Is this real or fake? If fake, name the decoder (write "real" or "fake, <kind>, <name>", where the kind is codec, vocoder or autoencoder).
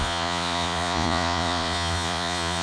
fake, vocoder, Vocos